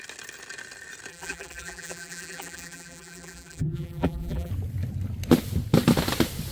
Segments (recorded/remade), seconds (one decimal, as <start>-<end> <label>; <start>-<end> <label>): 0.0-1.1 recorded; 1.1-4.5 remade; 4.5-6.5 recorded